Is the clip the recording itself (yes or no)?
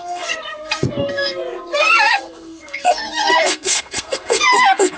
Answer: no